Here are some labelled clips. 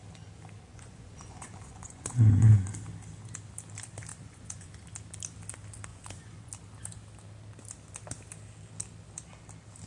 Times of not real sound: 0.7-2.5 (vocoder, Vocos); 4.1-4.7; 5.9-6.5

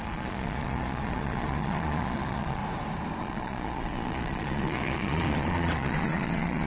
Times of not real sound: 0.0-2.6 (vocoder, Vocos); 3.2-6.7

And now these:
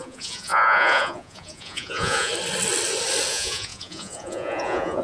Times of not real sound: 0.0-2.3 (vocoder, Vocos); 3.3-5.0

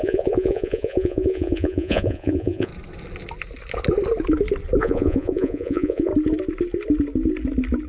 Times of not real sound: 0.0-2.7 (vocoder, Vocos); 4.8-6.1

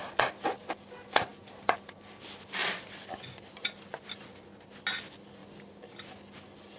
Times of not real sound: none

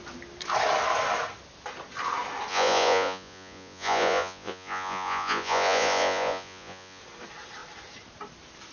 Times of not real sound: 2.5-7.0 (vocoder, Vocos)